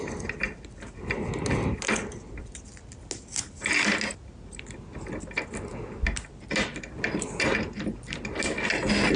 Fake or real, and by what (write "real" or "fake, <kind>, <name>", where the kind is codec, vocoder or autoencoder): real